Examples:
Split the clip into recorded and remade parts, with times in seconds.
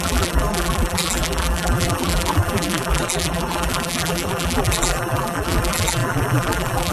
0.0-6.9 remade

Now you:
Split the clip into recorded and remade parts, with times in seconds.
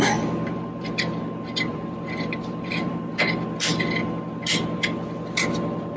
0.0-1.7 recorded; 1.7-3.1 remade; 3.1-6.0 recorded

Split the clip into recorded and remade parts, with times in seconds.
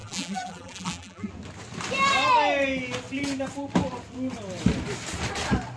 0.0-1.3 remade; 1.3-5.8 recorded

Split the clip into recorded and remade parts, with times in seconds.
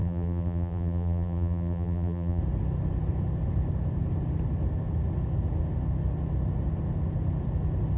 0.0-2.4 remade; 2.4-8.0 recorded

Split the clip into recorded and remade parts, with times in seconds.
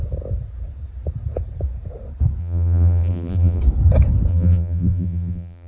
0.0-2.4 recorded; 2.4-3.6 remade; 3.6-4.3 recorded; 4.3-5.7 remade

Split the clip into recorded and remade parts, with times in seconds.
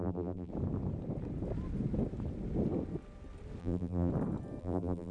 0.0-0.5 remade; 0.5-3.6 recorded; 3.6-4.1 remade; 4.1-4.6 recorded; 4.6-5.1 remade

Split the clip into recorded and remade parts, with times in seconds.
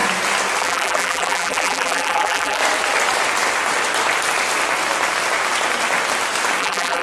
0.0-0.6 recorded; 0.6-2.6 remade; 2.6-6.6 recorded; 6.6-7.0 remade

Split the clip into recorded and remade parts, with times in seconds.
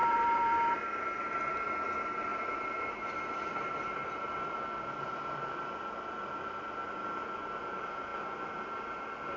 0.0-0.8 remade; 0.8-2.3 recorded; 2.3-4.6 remade; 4.6-9.4 recorded